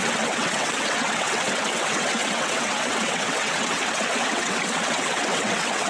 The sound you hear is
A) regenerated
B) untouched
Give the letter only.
A